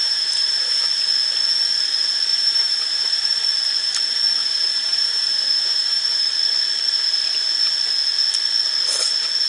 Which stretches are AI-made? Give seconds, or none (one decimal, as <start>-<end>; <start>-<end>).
0.0-0.8; 2.3-3.3; 4.4-6.3